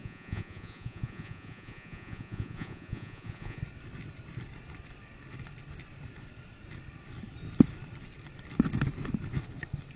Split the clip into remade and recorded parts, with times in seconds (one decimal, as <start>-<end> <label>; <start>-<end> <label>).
0.0-3.6 remade; 3.6-10.0 recorded